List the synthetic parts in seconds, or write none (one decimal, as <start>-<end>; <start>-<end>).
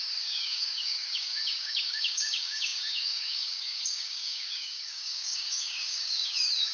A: 0.0-6.7